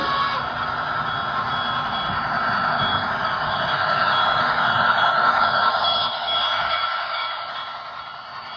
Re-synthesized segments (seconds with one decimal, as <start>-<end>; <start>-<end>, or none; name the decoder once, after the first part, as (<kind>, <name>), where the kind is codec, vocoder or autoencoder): 2.9-7.5 (codec, DAC)